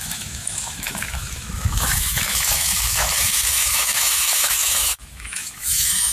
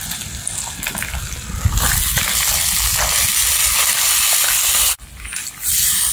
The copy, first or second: first